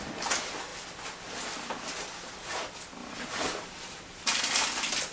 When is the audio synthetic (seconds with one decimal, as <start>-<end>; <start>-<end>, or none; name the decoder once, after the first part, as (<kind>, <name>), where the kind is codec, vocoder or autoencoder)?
3.0-4.3 (vocoder, BigVGAN v2)